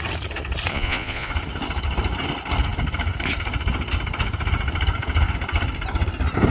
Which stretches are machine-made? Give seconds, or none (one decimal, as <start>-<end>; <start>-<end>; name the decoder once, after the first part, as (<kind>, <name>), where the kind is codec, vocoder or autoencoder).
0.7-1.3 (vocoder, Vocos)